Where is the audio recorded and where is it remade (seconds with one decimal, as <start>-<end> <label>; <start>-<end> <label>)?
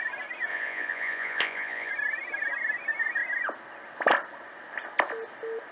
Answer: 0.0-0.5 recorded; 0.5-1.9 remade; 1.9-5.7 recorded